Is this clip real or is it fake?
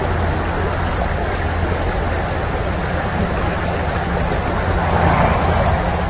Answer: real